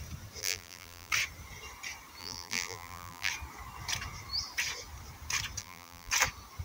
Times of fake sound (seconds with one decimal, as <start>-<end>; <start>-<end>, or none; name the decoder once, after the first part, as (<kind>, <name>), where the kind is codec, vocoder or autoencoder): 0.4-1.1 (vocoder, BigVGAN v2); 2.2-3.3; 5.6-6.1